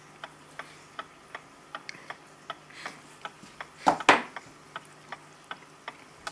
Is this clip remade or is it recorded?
recorded